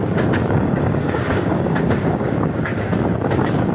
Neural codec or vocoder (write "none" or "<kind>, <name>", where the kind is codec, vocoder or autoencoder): codec, DAC